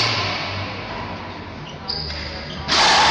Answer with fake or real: real